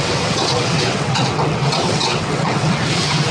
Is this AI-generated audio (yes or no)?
yes